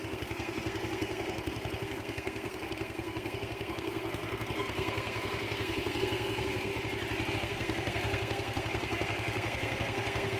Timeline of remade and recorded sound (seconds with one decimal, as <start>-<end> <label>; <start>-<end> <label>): 0.0-6.7 remade; 6.7-7.3 recorded; 7.3-10.4 remade